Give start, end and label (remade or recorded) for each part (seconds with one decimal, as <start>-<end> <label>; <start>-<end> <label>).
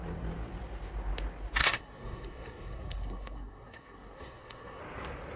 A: 0.0-1.6 recorded; 1.6-4.8 remade; 4.8-5.4 recorded